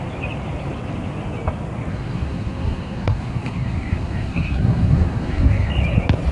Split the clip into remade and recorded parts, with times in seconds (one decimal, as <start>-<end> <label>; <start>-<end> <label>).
0.0-1.9 recorded; 1.9-5.7 remade; 5.7-6.3 recorded